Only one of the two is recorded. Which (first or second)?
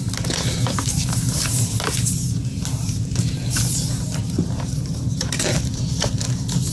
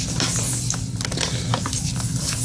second